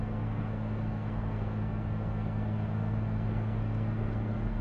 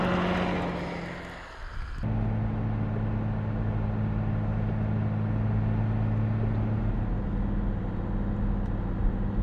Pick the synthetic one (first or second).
first